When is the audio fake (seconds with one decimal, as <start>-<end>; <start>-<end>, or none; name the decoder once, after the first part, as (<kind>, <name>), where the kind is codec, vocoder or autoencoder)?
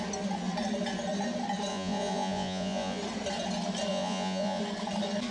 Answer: 1.7-3.0 (vocoder, Vocos); 3.9-4.6